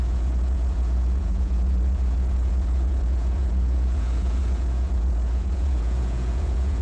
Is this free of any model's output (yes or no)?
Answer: no